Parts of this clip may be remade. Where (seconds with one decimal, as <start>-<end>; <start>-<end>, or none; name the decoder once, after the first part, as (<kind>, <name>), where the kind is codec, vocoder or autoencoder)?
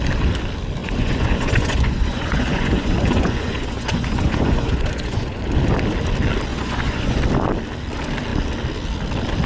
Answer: 0.8-5.4 (vocoder, Vocos); 6.5-7.2